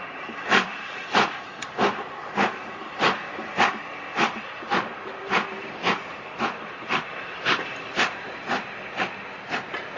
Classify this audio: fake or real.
fake